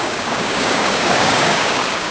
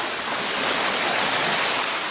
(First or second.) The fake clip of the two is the first